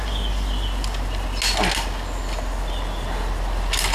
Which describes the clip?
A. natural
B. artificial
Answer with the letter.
A